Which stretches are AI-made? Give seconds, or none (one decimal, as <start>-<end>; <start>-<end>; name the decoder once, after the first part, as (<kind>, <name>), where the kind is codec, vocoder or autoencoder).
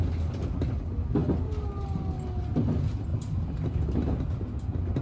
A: none